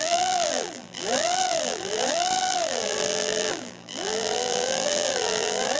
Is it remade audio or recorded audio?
remade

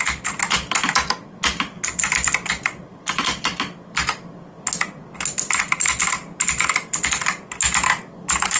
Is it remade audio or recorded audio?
recorded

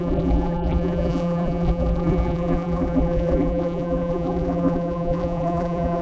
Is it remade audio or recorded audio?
remade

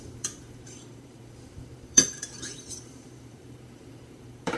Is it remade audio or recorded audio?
remade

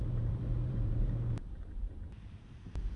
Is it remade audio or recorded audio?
remade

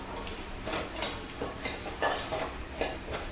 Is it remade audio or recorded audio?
remade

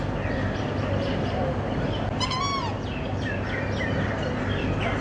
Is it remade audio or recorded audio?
recorded